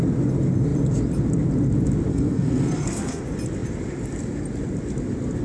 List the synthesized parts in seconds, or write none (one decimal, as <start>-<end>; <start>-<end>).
2.1-3.2